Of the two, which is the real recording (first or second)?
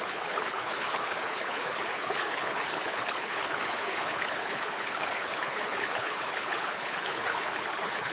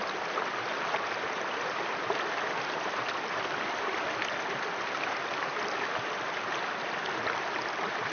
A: second